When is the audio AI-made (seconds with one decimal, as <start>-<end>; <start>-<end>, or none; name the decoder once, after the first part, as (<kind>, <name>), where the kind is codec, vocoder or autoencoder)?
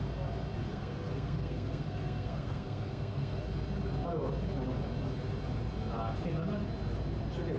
0.7-3.4 (codec, SNAC)